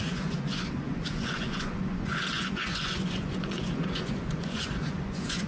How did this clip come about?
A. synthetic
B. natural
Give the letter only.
A